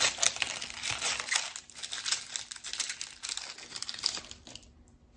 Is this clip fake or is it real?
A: real